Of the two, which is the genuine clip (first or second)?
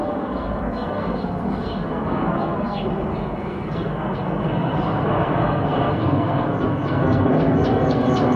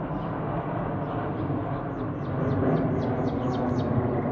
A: second